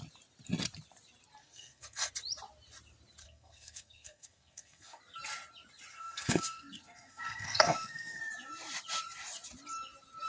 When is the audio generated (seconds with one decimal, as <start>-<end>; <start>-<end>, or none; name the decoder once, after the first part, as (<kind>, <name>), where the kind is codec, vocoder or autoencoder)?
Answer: 1.4-2.1 (codec, SNAC); 3.2-5.0; 5.9-8.2